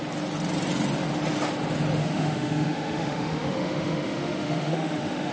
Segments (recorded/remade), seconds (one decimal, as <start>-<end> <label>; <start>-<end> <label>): 0.0-2.0 recorded; 2.0-5.3 remade